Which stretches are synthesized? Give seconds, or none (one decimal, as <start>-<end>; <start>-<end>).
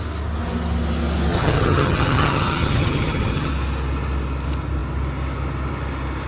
1.3-3.5